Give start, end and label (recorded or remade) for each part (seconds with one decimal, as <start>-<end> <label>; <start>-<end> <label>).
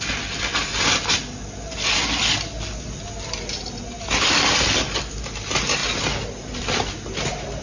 0.0-7.6 recorded